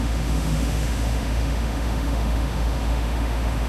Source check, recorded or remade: remade